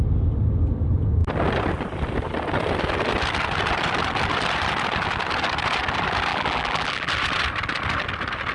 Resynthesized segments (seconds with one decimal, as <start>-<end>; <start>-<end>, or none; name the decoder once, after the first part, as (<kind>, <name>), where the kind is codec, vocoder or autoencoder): 6.3-7.1 (vocoder, BigVGAN v2)